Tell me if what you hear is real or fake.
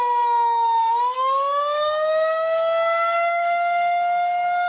fake